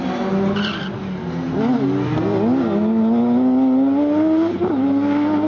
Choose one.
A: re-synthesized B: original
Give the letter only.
B